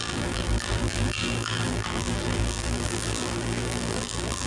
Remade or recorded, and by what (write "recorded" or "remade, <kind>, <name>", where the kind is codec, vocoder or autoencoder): remade, vocoder, BigVGAN v2